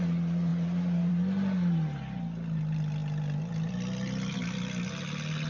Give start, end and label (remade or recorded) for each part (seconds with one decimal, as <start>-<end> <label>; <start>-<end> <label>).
0.0-5.5 recorded

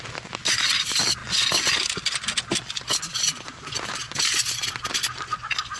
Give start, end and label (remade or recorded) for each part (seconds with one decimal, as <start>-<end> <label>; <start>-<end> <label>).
0.0-5.8 recorded

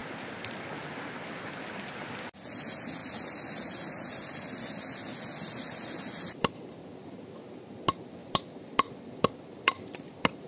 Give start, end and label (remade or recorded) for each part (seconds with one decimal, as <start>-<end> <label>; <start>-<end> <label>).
0.0-8.2 recorded; 8.2-10.5 remade

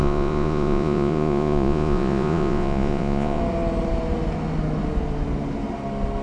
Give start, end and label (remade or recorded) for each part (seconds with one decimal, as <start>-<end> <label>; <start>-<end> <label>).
0.0-3.4 remade; 3.4-6.2 recorded

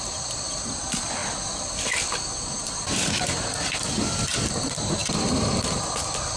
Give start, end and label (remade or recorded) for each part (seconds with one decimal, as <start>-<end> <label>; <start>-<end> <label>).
0.0-6.4 recorded

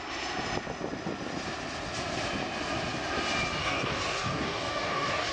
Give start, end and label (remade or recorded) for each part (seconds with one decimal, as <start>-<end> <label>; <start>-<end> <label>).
0.0-3.6 recorded; 3.6-5.3 remade

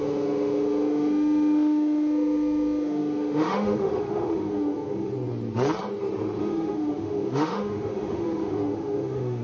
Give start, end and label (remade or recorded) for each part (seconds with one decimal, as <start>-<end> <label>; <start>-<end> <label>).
0.0-5.1 remade; 5.1-6.4 recorded; 6.4-9.4 remade